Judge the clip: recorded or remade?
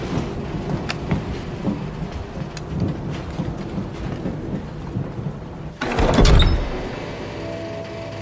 recorded